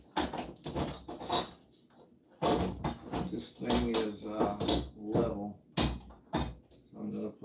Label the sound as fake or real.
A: real